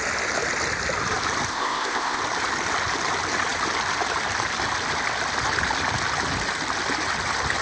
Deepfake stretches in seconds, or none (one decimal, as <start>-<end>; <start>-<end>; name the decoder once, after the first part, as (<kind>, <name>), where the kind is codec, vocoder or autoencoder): 1.5-2.2 (codec, ZipCodec)